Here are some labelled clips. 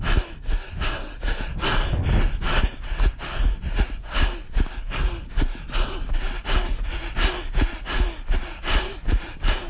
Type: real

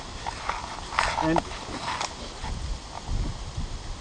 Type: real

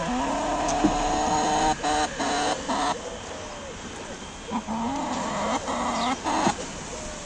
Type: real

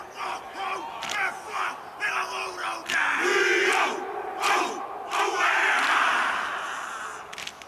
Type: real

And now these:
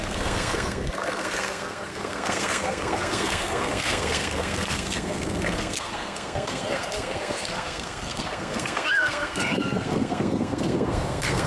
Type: fake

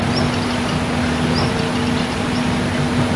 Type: real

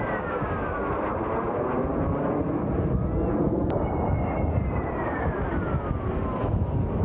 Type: real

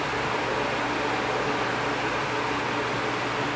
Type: real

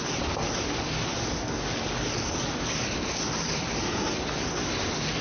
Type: real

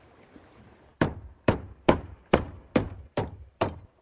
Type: fake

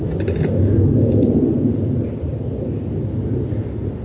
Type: real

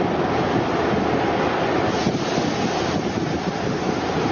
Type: real